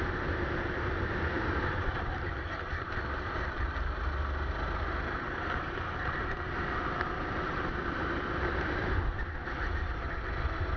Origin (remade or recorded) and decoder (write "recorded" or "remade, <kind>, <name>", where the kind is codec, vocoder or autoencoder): recorded